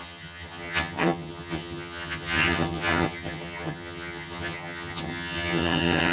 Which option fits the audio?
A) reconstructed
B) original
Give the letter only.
A